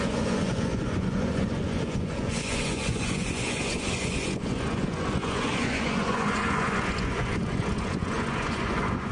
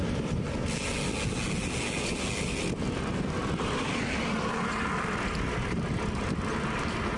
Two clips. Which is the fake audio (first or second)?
first